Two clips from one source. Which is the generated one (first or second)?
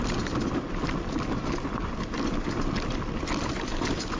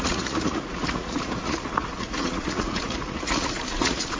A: second